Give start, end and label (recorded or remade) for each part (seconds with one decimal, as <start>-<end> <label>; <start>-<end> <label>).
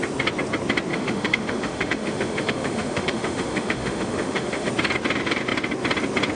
0.0-0.9 recorded; 0.9-4.7 remade; 4.7-6.3 recorded